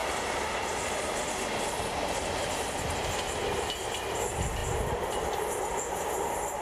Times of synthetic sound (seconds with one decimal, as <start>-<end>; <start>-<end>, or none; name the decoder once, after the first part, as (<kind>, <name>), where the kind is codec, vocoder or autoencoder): none